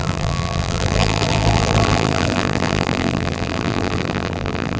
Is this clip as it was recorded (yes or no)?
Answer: no